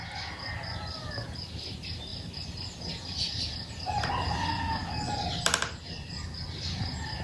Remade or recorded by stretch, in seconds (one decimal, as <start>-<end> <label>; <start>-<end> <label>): 0.0-7.2 recorded